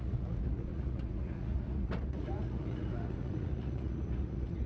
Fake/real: fake